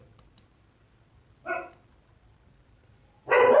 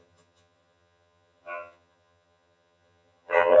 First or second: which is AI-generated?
second